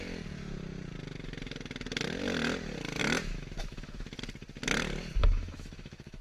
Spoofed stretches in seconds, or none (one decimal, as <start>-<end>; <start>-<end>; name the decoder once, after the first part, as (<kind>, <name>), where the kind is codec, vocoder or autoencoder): 3.0-4.2 (autoencoder, DAC-VAE); 5.2-6.2